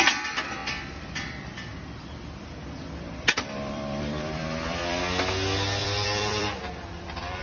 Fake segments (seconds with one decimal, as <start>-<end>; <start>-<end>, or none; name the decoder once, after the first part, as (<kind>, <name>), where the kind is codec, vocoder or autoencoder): 0.6-5.0 (vocoder, BigVGAN v2); 5.8-7.4